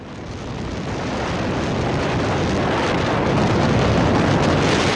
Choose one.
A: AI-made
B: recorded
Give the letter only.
B